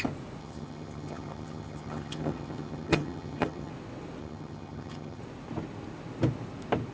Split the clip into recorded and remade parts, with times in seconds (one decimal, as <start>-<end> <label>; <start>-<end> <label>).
0.0-0.4 recorded; 0.4-3.7 remade; 3.7-4.2 recorded; 4.2-5.2 remade; 5.2-6.9 recorded